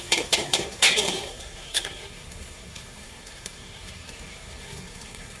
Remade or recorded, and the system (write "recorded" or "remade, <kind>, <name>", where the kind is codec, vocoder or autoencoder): remade, codec, SNAC